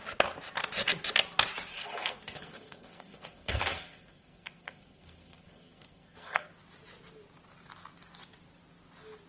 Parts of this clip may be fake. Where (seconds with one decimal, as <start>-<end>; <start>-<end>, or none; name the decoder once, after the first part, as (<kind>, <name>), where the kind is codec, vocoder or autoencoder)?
1.7-6.5 (codec, SNAC)

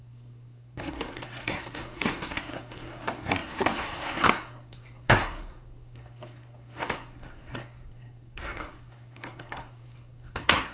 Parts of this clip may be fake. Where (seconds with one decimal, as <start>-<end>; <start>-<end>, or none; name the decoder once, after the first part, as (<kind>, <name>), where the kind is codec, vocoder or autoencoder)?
0.0-10.7 (codec, SNAC)

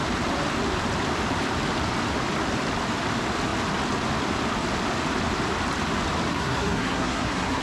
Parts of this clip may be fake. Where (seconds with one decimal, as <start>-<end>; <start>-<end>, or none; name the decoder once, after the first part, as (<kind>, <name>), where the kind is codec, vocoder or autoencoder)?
6.3-7.6 (codec, SNAC)

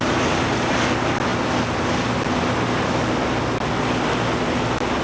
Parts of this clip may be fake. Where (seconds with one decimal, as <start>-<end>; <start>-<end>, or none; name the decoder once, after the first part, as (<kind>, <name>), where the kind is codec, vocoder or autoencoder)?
none

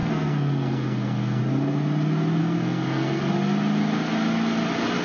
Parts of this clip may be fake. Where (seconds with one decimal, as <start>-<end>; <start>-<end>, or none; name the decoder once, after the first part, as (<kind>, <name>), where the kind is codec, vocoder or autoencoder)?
0.0-1.4 (codec, SNAC); 2.4-3.3

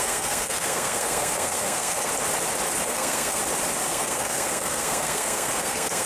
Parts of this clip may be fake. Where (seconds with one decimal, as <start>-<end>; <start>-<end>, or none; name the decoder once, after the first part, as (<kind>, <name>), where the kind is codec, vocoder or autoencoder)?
0.0-2.1 (codec, SNAC); 2.8-3.4; 3.9-6.1

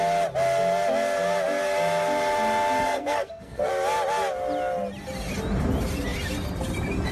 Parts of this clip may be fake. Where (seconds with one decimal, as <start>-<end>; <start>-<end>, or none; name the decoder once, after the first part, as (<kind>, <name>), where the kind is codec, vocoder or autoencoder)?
2.8-3.7 (codec, SNAC)

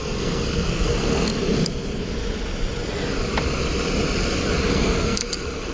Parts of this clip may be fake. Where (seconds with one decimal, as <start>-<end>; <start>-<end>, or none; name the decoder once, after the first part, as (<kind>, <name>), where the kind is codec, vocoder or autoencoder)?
0.0-1.3 (codec, SNAC); 4.7-5.7